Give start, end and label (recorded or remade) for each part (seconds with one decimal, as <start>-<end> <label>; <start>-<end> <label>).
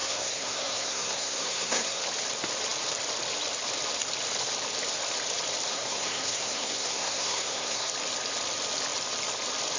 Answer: 0.0-2.0 remade; 2.0-5.7 recorded; 5.7-7.9 remade; 7.9-9.8 recorded